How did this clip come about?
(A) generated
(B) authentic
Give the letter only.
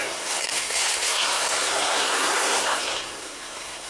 A